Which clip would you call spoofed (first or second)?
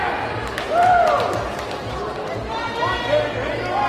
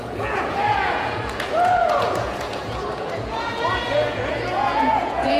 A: second